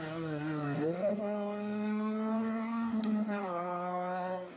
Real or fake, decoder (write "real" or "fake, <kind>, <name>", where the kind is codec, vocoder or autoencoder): fake, codec, SNAC